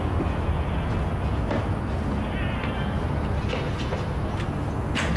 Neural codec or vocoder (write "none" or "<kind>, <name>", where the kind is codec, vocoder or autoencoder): none